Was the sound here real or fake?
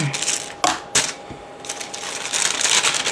real